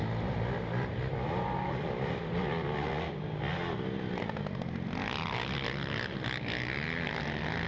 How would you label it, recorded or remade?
recorded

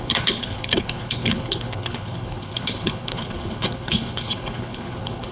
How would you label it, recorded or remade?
remade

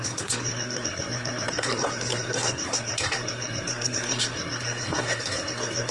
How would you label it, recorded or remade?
remade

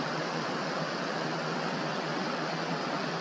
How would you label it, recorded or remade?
remade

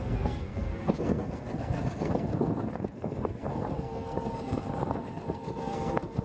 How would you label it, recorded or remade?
remade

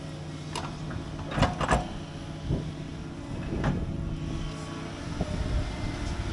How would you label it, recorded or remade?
recorded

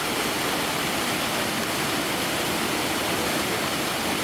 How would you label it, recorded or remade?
recorded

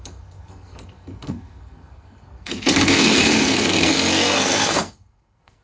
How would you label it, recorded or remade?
remade